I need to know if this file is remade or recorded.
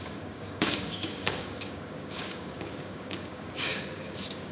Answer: remade